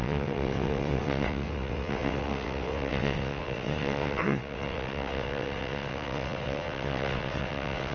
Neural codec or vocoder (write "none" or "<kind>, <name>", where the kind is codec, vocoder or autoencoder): vocoder, WaveNeXt